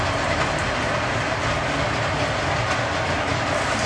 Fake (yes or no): no